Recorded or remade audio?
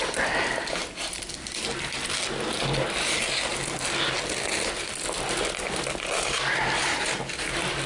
recorded